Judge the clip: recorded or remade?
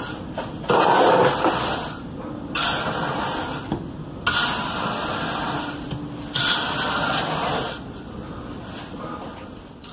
recorded